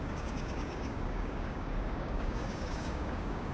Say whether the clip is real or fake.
fake